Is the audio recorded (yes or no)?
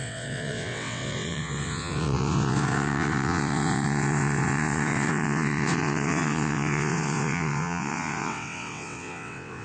no